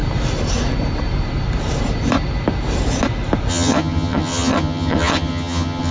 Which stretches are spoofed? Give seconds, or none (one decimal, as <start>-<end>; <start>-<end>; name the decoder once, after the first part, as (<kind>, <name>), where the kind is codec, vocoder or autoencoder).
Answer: 3.5-5.9 (vocoder, HiFi-GAN)